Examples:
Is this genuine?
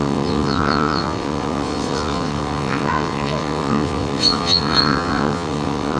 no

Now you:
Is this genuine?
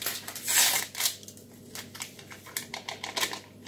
yes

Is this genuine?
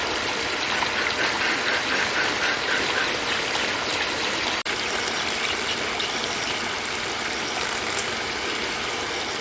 yes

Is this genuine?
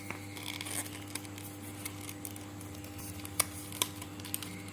yes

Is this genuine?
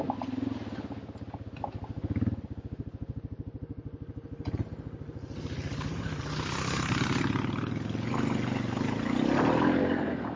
yes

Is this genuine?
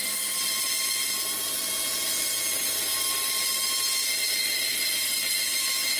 yes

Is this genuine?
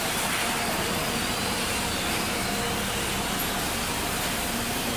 yes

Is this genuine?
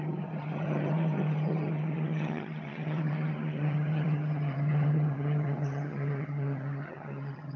no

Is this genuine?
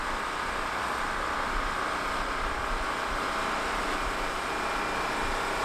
yes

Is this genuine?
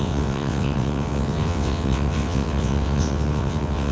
no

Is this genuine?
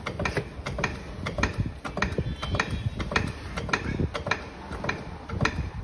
yes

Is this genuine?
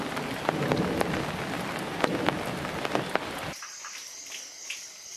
yes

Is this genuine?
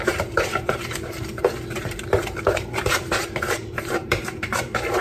no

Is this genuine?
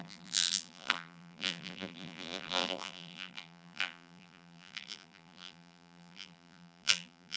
no